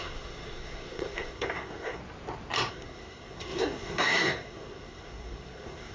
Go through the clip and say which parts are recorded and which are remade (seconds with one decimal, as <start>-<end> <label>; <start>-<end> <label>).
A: 0.0-2.0 remade; 2.0-2.7 recorded; 2.7-5.9 remade